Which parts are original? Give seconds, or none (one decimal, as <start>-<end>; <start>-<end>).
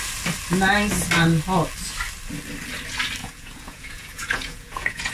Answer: 0.0-3.2